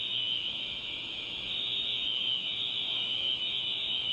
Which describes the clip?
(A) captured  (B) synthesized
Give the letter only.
B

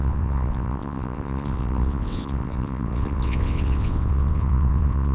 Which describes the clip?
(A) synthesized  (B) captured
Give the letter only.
A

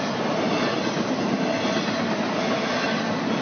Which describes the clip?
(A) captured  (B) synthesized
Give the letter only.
A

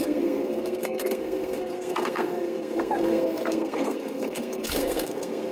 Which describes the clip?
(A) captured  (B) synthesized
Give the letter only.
B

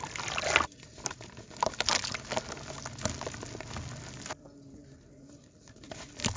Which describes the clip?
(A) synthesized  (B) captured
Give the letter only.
B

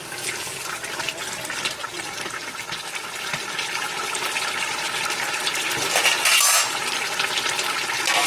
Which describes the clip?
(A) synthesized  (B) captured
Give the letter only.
B